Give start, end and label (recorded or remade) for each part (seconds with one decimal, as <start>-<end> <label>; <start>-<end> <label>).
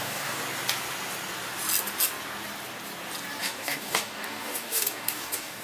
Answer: 0.0-0.4 remade; 0.4-3.4 recorded; 3.4-5.6 remade